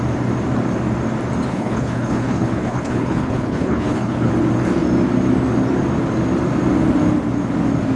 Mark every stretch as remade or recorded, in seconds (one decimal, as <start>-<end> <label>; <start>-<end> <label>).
0.0-1.5 recorded; 1.5-4.3 remade; 4.3-8.0 recorded